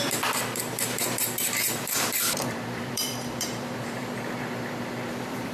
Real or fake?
fake